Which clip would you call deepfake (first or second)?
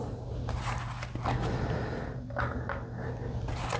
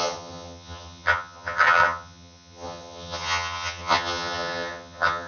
second